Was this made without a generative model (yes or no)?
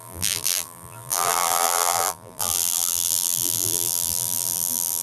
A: no